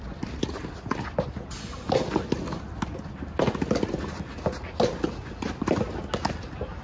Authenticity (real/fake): real